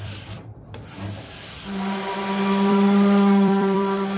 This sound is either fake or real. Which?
fake